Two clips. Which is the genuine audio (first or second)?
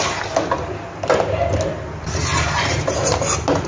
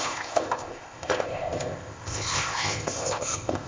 first